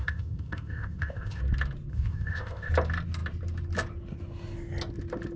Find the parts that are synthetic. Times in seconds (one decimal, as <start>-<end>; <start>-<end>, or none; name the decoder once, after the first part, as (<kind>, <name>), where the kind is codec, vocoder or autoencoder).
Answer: 0.0-1.4 (codec, ZipCodec); 1.9-2.7